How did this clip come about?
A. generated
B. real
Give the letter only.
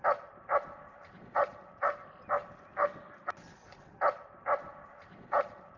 B